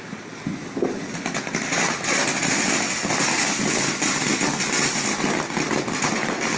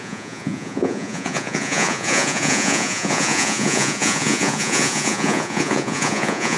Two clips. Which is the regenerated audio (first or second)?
second